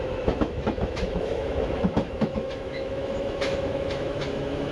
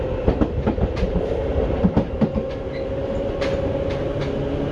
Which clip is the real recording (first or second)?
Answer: second